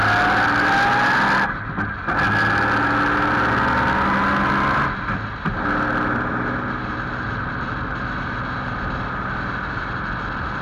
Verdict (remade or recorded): recorded